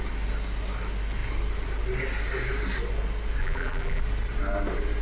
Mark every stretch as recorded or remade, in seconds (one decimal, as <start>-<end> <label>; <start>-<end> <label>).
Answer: 0.0-3.4 recorded; 3.4-4.0 remade; 4.0-5.0 recorded